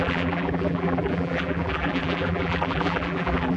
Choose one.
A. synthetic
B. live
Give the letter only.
A